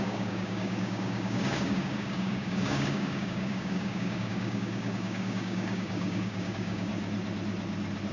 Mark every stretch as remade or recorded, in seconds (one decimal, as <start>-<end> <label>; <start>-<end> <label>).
0.0-6.9 remade; 6.9-8.1 recorded